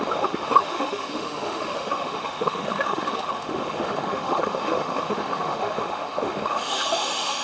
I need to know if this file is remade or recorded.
remade